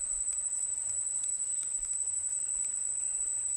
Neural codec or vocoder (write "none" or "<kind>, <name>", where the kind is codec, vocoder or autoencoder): none